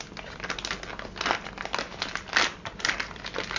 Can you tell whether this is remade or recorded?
recorded